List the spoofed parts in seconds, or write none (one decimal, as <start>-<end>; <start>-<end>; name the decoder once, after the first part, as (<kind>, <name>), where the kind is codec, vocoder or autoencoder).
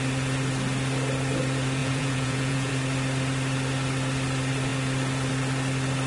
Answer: 1.8-2.7 (vocoder, Vocos)